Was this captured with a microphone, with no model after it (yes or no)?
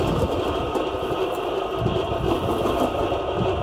yes